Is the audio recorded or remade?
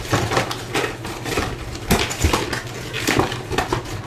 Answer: recorded